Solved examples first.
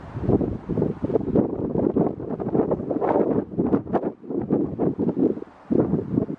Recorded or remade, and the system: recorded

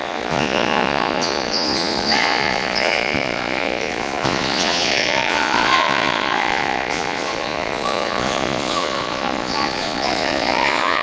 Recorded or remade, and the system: remade, vocoder, Vocos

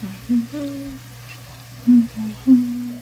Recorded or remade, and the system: recorded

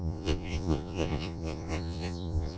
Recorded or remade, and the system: remade, vocoder, Vocos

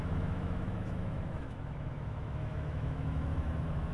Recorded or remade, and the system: remade, autoencoder, DAC-VAE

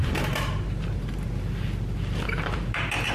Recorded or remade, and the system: recorded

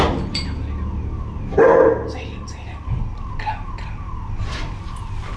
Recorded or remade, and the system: recorded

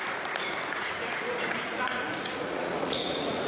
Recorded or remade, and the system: remade, vocoder, Vocos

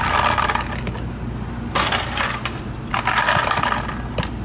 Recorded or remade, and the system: recorded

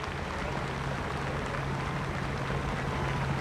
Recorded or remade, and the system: recorded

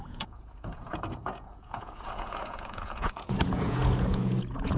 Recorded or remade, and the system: remade, vocoder, Vocos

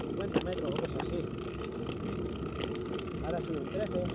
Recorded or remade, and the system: recorded